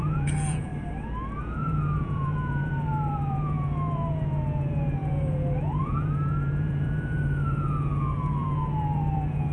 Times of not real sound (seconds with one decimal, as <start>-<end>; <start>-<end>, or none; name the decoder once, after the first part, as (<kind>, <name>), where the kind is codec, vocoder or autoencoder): 0.0-0.7 (vocoder, Vocos); 1.4-9.5